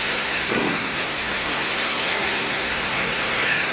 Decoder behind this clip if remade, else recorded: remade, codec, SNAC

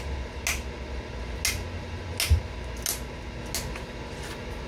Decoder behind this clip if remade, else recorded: recorded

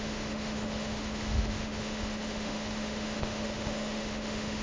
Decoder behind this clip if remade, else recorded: remade, autoencoder, DAC-VAE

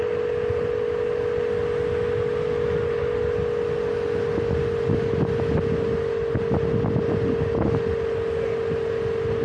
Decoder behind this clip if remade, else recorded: recorded